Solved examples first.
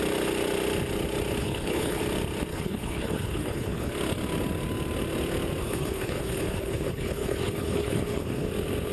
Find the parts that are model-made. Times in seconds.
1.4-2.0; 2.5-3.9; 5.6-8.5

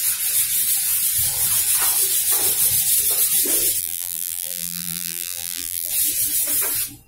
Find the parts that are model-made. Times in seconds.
3.8-5.9